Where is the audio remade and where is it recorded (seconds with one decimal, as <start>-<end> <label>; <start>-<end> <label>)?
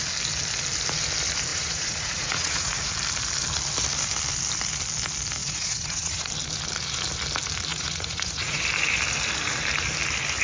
0.0-1.5 recorded; 1.5-2.9 remade; 2.9-5.4 recorded; 5.4-6.3 remade; 6.3-7.7 recorded; 7.7-8.6 remade; 8.6-10.4 recorded